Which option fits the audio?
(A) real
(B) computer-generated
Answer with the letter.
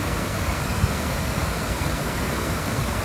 B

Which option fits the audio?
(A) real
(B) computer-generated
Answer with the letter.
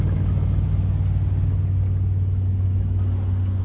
A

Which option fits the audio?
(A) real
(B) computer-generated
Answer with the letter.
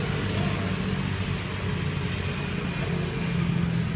A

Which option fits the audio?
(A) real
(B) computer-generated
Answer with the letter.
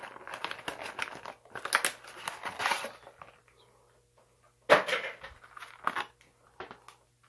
A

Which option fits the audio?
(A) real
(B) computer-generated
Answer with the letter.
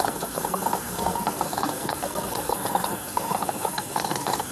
B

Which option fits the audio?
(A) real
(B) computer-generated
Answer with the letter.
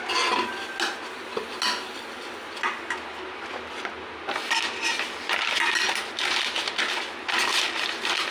A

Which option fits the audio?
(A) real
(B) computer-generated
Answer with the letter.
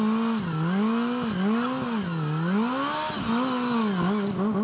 A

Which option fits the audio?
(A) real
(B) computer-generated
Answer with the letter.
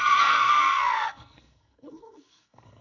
B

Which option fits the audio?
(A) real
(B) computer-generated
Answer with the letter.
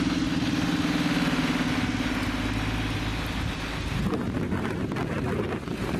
A